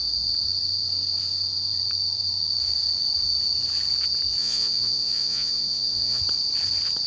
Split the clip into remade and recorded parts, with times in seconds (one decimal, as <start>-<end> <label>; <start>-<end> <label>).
0.0-4.4 recorded; 4.4-6.2 remade; 6.2-7.1 recorded